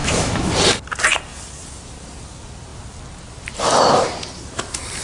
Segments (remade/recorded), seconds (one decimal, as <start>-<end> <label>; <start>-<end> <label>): 0.0-0.5 remade; 0.5-5.0 recorded